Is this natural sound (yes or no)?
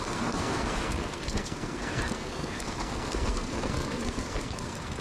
no